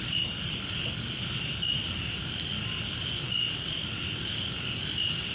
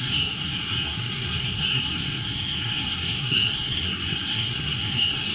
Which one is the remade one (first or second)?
second